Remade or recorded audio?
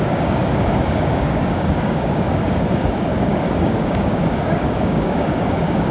remade